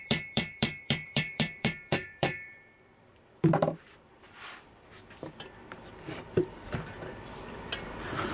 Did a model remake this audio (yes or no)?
yes